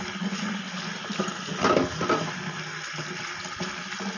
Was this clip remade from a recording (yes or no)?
no